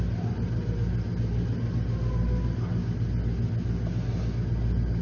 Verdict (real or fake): real